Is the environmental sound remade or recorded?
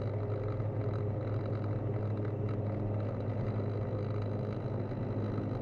recorded